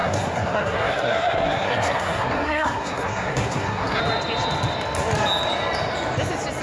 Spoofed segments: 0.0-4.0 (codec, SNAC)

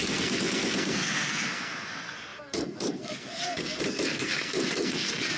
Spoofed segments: 0.0-5.4 (codec, SNAC)